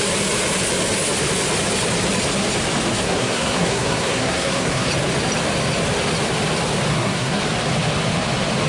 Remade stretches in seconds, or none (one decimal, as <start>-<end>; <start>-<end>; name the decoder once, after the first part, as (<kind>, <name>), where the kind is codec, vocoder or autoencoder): 2.9-4.9 (codec, SNAC); 6.9-7.4